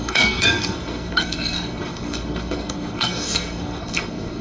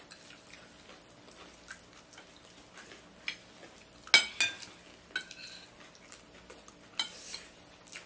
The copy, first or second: first